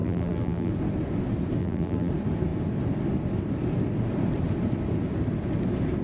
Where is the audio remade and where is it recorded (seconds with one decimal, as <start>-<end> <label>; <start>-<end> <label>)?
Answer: 0.0-0.7 remade; 0.7-1.6 recorded; 1.6-2.1 remade; 2.1-6.0 recorded